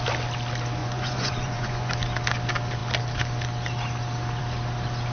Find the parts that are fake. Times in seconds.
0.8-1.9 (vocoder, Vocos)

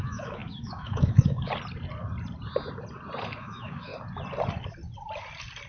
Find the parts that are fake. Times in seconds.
0.0-1.5 (autoencoder, DAC-VAE); 3.4-3.9

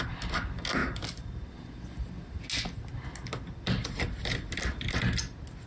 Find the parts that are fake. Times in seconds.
none

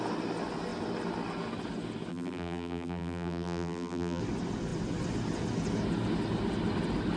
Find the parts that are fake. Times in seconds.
2.1-4.2 (vocoder, BigVGAN v2)

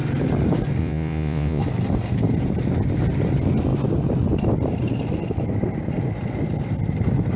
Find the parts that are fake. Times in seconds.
0.8-1.6 (vocoder, Vocos)

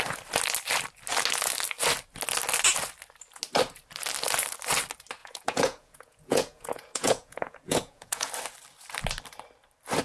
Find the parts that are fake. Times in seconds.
5.2-8.3 (vocoder, Vocos)